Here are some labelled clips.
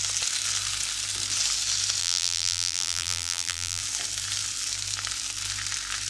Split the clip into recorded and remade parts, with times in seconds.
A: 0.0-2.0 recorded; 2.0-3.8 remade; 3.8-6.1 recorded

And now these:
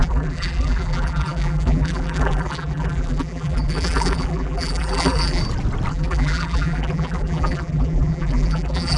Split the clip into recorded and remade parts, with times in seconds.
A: 0.0-5.4 remade; 5.4-5.9 recorded; 5.9-9.0 remade

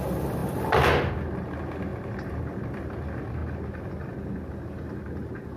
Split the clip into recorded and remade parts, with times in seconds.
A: 0.0-1.9 recorded; 1.9-2.4 remade; 2.4-5.6 recorded

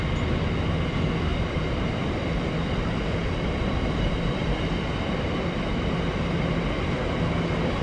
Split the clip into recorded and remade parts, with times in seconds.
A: 0.0-1.3 recorded; 1.3-6.0 remade; 6.0-7.8 recorded

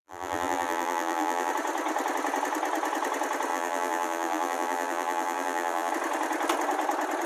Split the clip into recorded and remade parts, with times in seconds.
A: 0.0-1.5 remade; 1.5-3.5 recorded; 3.5-5.9 remade; 5.9-7.3 recorded

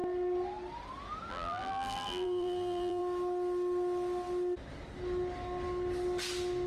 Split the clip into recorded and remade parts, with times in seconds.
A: 0.0-1.3 recorded; 1.3-3.0 remade; 3.0-6.7 recorded

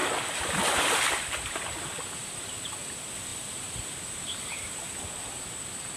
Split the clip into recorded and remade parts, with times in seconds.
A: 0.0-2.6 remade; 2.6-3.3 recorded; 3.3-4.0 remade; 4.0-6.0 recorded

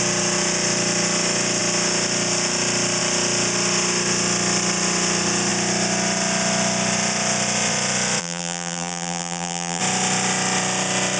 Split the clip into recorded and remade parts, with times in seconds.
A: 0.0-8.2 recorded; 8.2-9.8 remade; 9.8-11.2 recorded